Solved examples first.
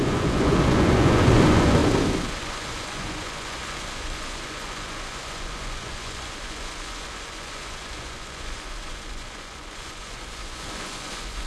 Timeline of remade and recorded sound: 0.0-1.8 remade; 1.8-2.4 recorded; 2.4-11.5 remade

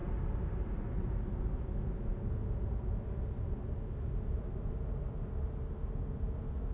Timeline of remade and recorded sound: 0.0-6.7 recorded